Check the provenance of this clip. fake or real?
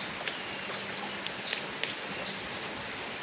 real